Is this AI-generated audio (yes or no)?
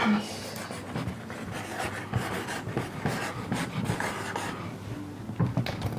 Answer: no